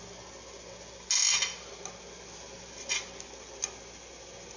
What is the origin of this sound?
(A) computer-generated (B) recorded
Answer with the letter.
B